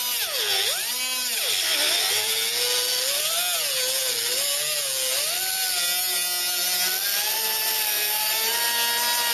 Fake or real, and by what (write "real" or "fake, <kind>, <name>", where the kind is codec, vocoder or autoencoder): real